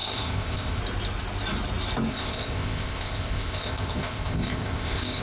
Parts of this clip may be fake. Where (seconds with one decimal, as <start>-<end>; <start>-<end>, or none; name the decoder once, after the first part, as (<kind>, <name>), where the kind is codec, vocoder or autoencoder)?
0.0-0.8 (codec, ZipCodec); 2.1-5.2

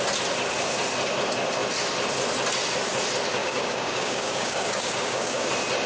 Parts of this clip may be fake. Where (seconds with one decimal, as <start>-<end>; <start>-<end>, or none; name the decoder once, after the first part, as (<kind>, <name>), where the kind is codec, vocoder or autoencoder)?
3.4-5.5 (codec, DAC)